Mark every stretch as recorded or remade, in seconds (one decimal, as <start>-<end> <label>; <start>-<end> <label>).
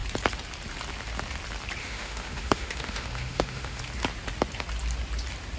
0.0-1.8 recorded; 1.8-3.8 remade; 3.8-5.6 recorded